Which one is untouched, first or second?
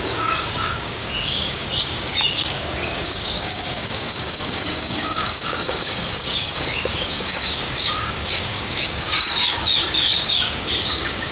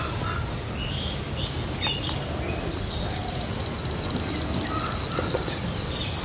second